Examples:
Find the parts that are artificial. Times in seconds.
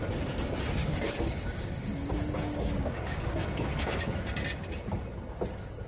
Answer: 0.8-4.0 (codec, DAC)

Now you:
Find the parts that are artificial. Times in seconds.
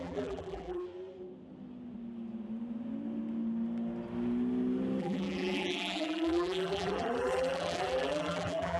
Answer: 0.0-0.8 (vocoder, BigVGAN v2); 5.0-8.8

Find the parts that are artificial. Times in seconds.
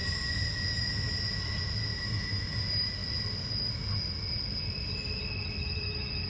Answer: 1.9-2.5 (autoencoder, DAC-VAE)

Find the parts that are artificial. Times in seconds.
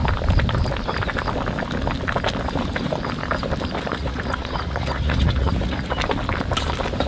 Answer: 3.9-6.0 (vocoder, Vocos)